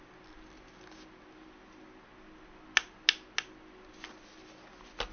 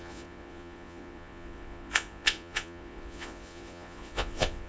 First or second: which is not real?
second